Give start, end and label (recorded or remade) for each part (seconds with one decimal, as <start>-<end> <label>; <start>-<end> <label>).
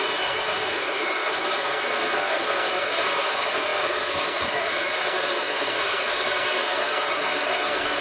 0.0-8.0 remade